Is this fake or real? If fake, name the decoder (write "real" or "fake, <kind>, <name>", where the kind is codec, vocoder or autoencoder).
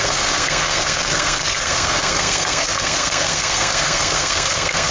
fake, codec, SNAC